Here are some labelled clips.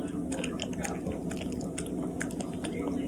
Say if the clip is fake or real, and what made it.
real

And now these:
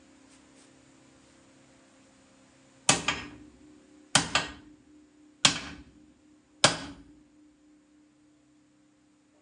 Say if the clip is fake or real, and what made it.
real